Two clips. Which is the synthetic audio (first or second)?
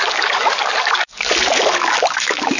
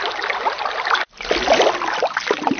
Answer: first